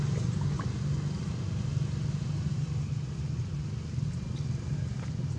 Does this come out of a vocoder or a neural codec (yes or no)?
no